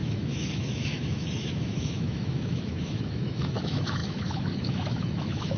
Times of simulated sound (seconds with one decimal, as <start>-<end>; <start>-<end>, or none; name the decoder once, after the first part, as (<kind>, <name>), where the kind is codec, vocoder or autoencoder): 0.0-5.6 (autoencoder, DAC-VAE)